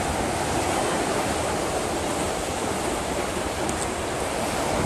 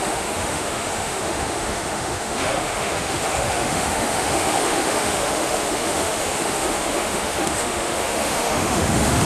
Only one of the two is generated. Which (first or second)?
second